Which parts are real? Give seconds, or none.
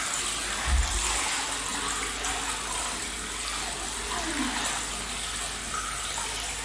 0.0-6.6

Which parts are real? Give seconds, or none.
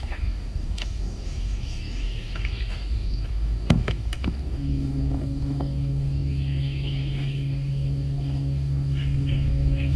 none